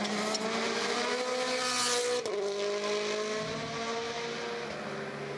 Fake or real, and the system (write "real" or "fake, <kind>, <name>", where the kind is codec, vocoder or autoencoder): real